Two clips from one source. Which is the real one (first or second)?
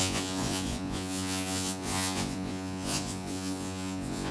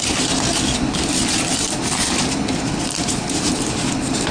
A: second